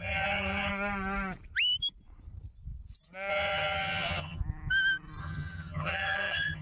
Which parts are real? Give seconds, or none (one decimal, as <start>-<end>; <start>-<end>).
0.7-3.3; 4.4-5.2